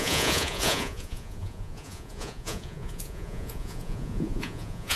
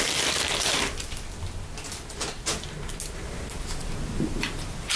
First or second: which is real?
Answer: second